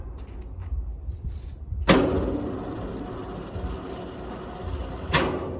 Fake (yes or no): no